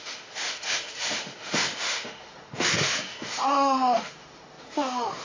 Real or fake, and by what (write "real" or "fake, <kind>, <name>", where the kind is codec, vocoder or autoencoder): fake, autoencoder, DAC-VAE